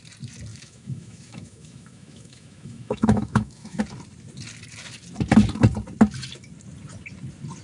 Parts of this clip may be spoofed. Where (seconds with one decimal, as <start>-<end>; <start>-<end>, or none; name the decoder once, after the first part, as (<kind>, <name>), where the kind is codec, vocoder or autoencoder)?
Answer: 0.5-3.8 (autoencoder, DAC-VAE)